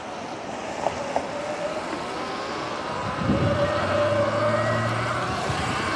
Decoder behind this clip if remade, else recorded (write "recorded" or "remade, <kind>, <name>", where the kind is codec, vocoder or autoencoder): recorded